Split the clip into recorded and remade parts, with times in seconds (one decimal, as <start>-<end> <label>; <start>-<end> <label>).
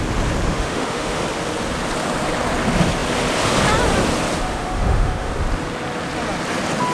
0.0-0.5 recorded; 0.5-1.2 remade; 1.2-4.5 recorded; 4.5-5.3 remade; 5.3-6.9 recorded